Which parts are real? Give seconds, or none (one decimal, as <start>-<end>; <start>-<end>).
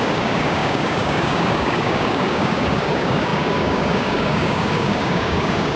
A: none